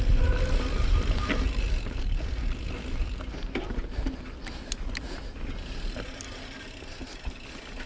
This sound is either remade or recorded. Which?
recorded